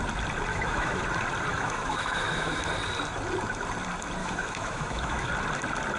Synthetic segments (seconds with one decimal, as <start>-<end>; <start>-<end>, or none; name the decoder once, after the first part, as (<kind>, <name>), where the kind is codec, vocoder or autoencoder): 0.5-1.0 (autoencoder, DAC-VAE); 1.5-2.7; 4.2-5.3